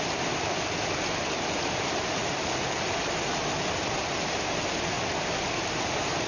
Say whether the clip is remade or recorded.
recorded